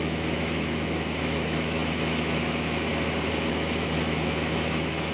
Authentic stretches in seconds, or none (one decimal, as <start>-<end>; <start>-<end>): 2.9-3.5